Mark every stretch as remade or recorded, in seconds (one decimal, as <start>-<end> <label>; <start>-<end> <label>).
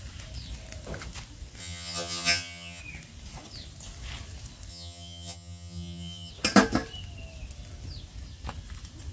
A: 0.0-1.6 recorded; 1.6-2.8 remade; 2.8-4.7 recorded; 4.7-6.3 remade; 6.3-9.1 recorded